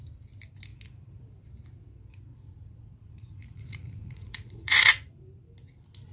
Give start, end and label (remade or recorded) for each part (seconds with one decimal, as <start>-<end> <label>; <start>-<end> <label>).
0.0-2.3 recorded; 2.3-5.1 remade; 5.1-6.1 recorded